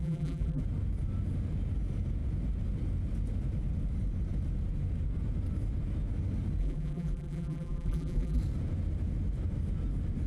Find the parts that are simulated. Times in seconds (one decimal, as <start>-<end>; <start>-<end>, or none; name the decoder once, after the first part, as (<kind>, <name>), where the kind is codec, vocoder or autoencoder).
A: 0.0-0.6 (vocoder, BigVGAN v2); 6.6-8.4